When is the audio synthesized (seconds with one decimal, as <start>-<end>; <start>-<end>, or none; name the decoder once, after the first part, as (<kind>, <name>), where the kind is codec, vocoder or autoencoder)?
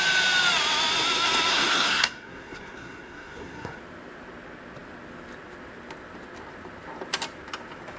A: 1.5-3.8 (codec, SNAC)